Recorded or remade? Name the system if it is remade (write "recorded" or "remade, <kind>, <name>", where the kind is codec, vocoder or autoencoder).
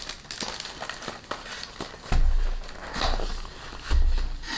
recorded